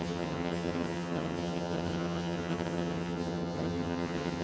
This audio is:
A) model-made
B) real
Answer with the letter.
A